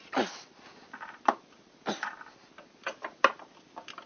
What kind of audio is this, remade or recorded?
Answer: recorded